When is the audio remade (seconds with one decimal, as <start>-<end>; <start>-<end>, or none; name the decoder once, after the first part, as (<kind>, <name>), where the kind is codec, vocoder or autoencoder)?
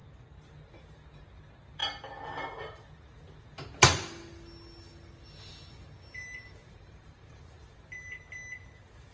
6.6-7.8 (vocoder, BigVGAN v2)